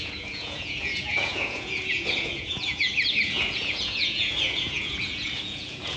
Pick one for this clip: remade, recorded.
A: remade